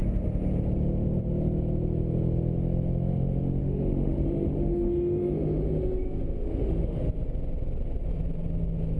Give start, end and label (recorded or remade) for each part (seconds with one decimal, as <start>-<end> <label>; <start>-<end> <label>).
0.0-3.6 recorded; 3.6-7.0 remade; 7.0-9.0 recorded